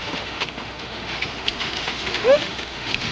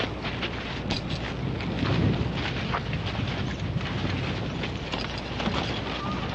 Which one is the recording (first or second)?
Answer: second